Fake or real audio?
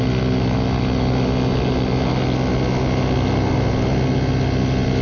real